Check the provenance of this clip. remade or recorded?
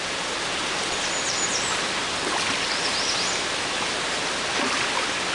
recorded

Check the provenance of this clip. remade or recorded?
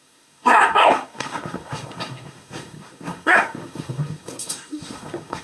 remade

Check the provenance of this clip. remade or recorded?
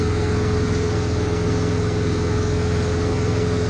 remade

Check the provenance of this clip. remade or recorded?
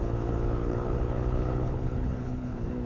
remade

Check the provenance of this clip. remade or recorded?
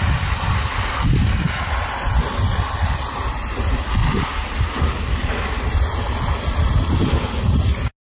recorded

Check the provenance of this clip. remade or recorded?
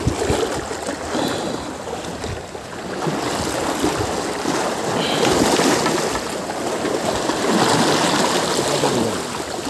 recorded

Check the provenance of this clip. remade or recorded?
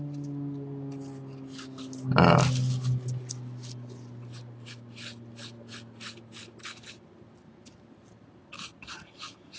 recorded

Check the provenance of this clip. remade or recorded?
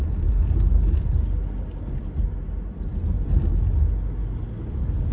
recorded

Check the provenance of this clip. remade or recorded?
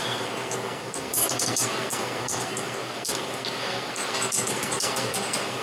remade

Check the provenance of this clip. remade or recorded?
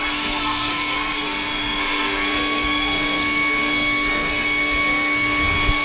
remade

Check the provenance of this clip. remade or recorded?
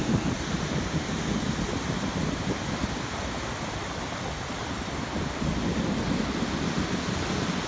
recorded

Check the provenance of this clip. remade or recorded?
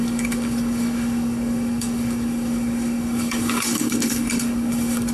remade